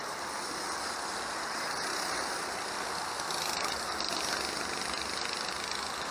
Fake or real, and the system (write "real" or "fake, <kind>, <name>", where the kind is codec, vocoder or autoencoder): real